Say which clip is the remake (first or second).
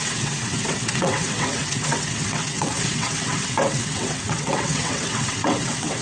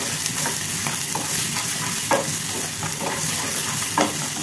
first